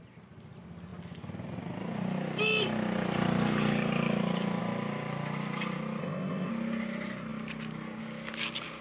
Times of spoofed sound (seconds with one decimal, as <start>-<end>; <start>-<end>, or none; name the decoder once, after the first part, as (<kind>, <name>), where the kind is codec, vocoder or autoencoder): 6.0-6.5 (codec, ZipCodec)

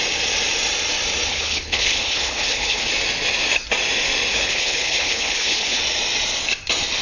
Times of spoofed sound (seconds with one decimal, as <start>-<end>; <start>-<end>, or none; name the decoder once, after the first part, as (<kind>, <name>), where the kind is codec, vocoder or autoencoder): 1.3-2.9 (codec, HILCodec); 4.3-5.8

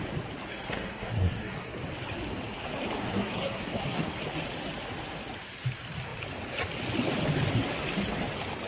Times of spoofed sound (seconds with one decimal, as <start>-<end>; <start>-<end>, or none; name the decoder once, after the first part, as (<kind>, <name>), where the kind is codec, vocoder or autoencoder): 0.5-1.7 (codec, SNAC); 3.0-4.2

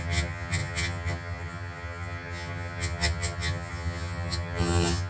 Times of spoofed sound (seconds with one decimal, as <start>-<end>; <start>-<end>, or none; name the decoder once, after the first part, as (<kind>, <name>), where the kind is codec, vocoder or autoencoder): 0.0-5.1 (vocoder, HiFi-GAN)

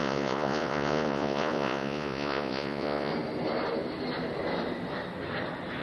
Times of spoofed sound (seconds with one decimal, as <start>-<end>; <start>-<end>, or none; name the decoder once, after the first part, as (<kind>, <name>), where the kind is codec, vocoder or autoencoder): 0.0-3.1 (vocoder, Vocos)

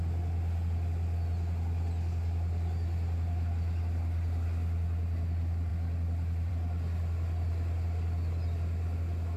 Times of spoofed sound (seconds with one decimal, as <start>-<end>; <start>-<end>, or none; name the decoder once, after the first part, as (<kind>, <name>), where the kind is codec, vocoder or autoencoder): none